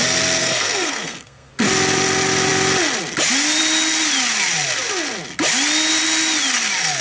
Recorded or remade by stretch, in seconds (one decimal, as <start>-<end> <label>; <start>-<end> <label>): 0.0-0.4 recorded; 0.4-1.5 remade; 1.5-7.0 recorded